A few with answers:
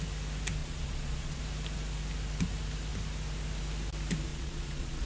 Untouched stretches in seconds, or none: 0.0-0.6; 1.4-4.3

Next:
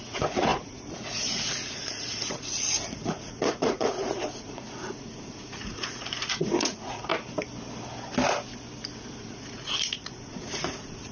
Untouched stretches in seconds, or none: 7.1-9.2

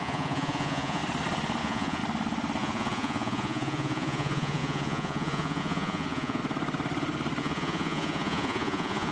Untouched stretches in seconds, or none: 1.0-1.6; 2.0-2.6; 6.4-7.4

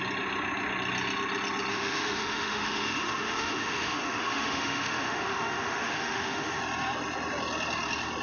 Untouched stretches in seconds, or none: 0.0-1.7; 6.6-8.2